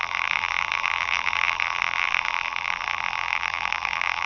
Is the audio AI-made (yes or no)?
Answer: yes